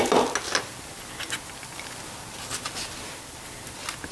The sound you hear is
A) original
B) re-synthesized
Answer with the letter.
A